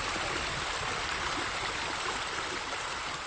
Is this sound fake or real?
fake